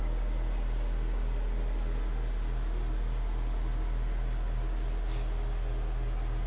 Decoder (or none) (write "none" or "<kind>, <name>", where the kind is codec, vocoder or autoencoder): none